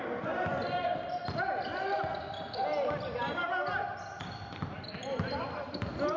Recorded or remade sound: remade